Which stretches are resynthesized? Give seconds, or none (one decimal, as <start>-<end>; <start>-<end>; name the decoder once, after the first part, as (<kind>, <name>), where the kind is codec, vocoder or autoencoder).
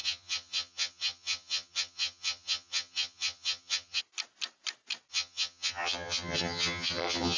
0.0-4.0 (vocoder, HiFi-GAN); 5.1-7.4